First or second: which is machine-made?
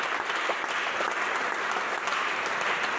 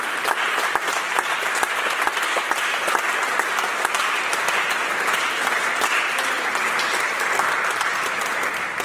first